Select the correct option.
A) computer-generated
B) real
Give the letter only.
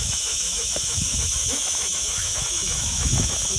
A